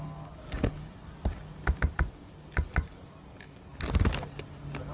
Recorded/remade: recorded